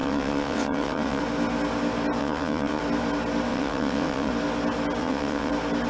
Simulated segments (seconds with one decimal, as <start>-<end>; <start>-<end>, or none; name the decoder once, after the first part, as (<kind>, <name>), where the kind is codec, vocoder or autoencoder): 0.0-1.2 (vocoder, WaveNeXt); 2.2-2.8; 3.5-4.3; 5.0-5.5